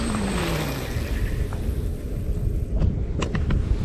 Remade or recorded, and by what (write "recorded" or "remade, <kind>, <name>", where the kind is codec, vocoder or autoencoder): recorded